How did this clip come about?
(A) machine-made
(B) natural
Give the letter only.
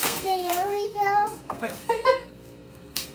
A